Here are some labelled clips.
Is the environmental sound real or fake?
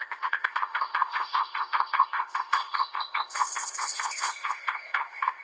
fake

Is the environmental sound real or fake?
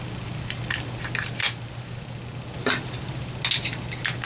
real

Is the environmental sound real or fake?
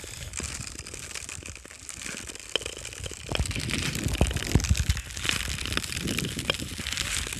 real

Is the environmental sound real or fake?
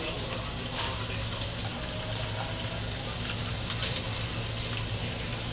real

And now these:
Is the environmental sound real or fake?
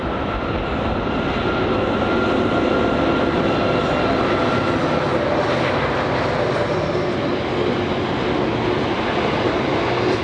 real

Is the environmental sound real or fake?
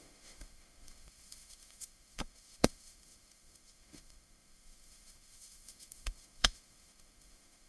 fake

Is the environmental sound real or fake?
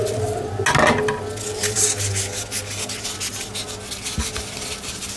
real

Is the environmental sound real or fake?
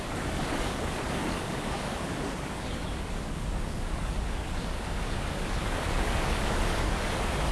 fake